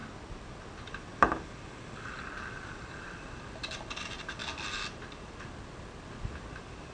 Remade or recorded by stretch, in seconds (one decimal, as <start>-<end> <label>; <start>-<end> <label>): 0.0-6.9 recorded